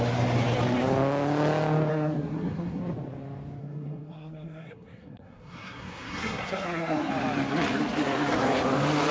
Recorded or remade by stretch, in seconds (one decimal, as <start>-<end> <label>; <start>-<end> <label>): 0.0-1.9 recorded; 1.9-2.8 remade; 2.8-3.6 recorded; 3.6-7.1 remade; 7.1-9.1 recorded